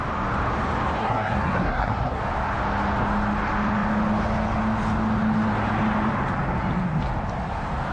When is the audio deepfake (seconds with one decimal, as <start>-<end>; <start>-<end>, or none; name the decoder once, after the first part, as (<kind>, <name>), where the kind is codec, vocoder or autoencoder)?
1.0-2.2 (codec, SNAC)